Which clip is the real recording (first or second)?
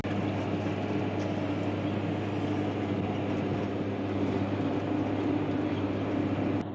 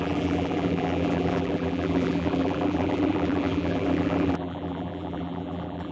first